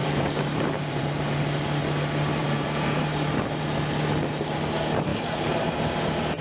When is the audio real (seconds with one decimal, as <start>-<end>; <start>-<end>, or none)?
1.0-2.4; 3.3-5.1

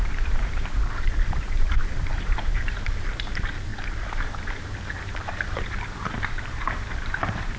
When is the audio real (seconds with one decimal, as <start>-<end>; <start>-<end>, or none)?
3.7-4.2

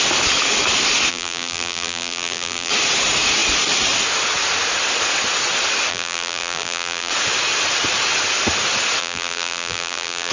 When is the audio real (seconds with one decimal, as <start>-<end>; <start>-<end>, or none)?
0.0-1.1; 2.7-5.9; 7.1-9.0

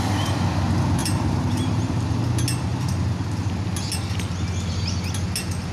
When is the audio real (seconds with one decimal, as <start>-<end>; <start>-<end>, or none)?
0.0-1.0; 2.0-5.7

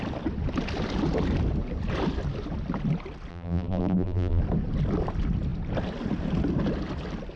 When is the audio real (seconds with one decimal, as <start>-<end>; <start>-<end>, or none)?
0.0-3.3; 4.4-7.4

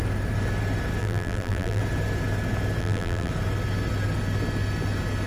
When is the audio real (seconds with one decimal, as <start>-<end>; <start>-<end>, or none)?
0.0-1.0; 1.8-2.8; 3.3-5.3

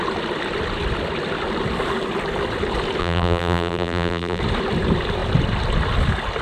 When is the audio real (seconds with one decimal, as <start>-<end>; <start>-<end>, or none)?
0.0-3.0; 4.4-6.4

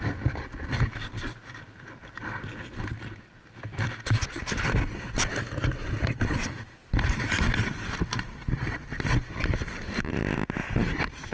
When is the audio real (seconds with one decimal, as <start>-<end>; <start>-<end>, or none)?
0.0-5.8; 7.4-11.3